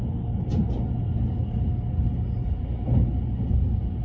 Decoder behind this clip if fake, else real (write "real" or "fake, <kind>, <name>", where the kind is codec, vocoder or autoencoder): real